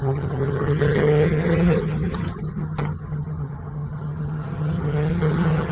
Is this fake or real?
fake